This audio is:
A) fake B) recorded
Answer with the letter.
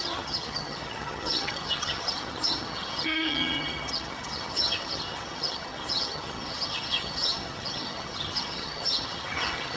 A